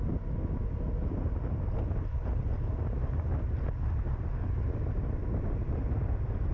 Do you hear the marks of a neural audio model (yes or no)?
no